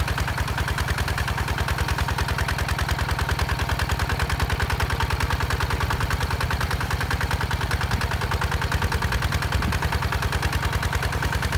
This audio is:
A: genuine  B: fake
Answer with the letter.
A